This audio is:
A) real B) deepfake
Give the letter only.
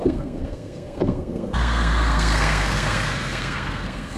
B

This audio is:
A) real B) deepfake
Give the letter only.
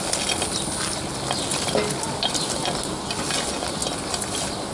A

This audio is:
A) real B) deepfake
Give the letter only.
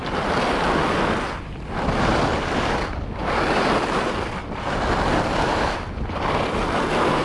A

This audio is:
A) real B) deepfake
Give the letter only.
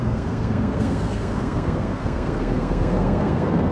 B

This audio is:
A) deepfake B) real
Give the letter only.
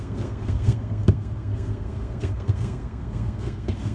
A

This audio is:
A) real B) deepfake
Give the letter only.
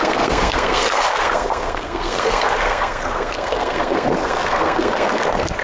B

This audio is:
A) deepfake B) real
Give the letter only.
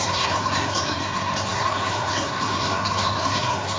A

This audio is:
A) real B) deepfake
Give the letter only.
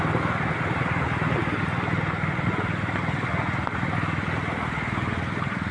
A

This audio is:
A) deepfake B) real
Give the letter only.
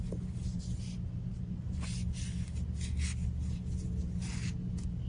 B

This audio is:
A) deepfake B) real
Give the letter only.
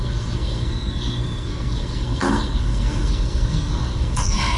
A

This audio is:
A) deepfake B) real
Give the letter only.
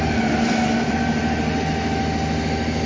B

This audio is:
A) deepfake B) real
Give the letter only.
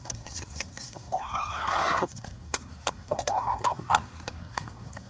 A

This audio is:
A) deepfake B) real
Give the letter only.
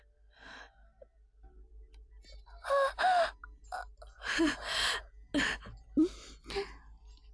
B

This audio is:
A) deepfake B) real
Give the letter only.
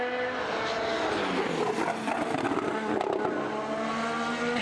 B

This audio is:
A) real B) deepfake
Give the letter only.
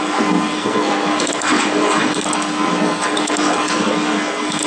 B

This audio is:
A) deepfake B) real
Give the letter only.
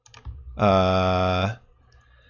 B